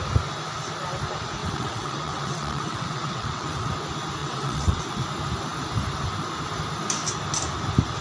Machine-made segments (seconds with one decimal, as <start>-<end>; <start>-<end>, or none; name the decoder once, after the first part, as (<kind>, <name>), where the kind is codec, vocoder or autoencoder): 1.4-3.7 (vocoder, WaveNeXt); 4.2-4.8

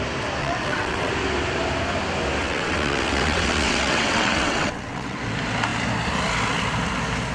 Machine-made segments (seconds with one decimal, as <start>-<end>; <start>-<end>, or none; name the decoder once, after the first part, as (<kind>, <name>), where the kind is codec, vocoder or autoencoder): 0.4-1.1 (vocoder, WaveNeXt); 2.4-5.2

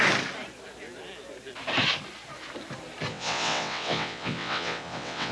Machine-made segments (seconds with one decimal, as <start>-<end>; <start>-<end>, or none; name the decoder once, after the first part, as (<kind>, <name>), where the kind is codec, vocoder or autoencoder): 3.1-5.3 (vocoder, WaveNeXt)

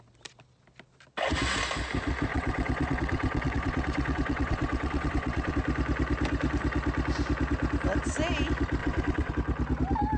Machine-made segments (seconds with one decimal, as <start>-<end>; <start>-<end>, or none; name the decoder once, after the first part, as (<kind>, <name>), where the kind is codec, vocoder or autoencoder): 2.3-5.5 (vocoder, WaveNeXt); 8.8-9.3